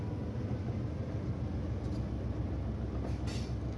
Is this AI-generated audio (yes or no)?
no